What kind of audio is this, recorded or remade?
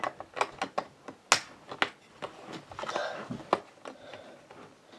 recorded